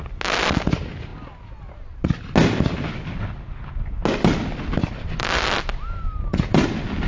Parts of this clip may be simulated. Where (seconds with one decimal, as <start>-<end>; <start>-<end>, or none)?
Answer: none